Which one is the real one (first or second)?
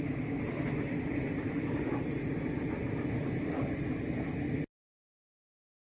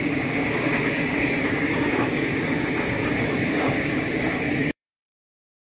first